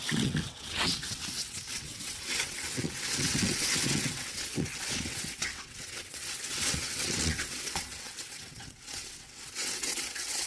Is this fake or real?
fake